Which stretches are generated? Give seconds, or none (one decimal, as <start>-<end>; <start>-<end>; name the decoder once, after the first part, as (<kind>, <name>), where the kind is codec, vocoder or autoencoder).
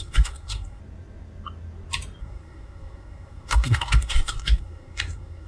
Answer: 0.0-0.8 (codec, SNAC); 2.2-5.5